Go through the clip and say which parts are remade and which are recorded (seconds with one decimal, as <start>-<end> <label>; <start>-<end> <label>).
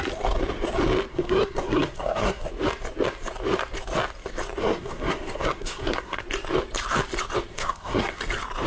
0.0-1.1 recorded; 1.1-2.5 remade; 2.5-4.6 recorded; 4.6-6.2 remade; 6.2-7.5 recorded; 7.5-8.2 remade; 8.2-8.7 recorded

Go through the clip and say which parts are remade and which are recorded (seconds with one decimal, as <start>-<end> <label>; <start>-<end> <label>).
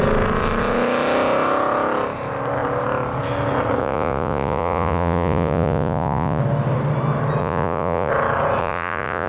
0.0-3.8 recorded; 3.8-6.4 remade; 6.4-7.4 recorded; 7.4-8.1 remade; 8.1-8.6 recorded; 8.6-9.3 remade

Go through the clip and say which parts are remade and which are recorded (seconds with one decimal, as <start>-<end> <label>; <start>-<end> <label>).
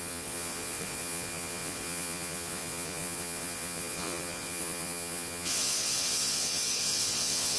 0.0-7.6 remade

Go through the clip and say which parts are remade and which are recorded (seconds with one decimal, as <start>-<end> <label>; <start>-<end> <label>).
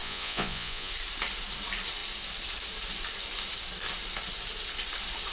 0.0-0.9 remade; 0.9-5.3 recorded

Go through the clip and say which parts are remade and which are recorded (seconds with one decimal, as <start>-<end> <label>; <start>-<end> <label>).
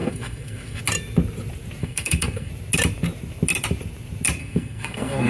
0.0-0.8 remade; 0.8-1.8 recorded; 1.8-2.5 remade; 2.5-4.4 recorded; 4.4-5.3 remade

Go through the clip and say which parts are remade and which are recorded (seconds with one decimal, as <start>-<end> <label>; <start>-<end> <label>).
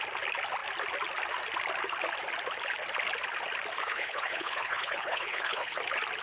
0.0-3.8 recorded; 3.8-5.8 remade; 5.8-6.2 recorded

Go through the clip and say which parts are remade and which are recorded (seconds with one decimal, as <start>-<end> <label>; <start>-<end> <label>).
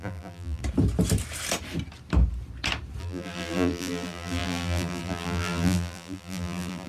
0.0-0.6 remade; 0.6-3.0 recorded; 3.0-6.9 remade